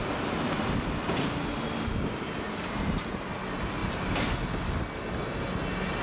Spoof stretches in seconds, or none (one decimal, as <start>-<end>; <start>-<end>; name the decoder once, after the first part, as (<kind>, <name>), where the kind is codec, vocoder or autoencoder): none